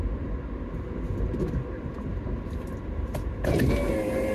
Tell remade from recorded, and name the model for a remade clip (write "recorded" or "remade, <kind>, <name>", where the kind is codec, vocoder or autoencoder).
recorded